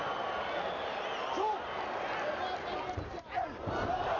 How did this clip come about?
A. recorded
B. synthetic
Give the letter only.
A